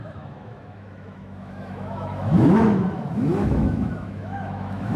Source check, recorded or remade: remade